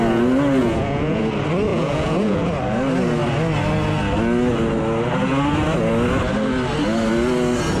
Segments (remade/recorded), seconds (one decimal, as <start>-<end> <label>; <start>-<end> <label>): 0.0-0.6 recorded; 0.6-1.2 remade; 1.2-1.7 recorded; 1.7-2.5 remade; 2.5-7.8 recorded